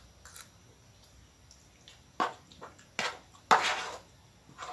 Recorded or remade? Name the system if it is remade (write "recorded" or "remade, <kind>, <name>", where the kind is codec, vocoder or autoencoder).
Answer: recorded